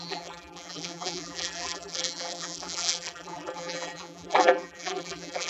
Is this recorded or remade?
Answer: remade